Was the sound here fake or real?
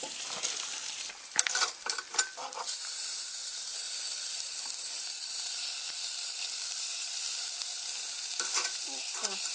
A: fake